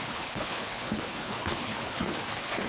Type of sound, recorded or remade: remade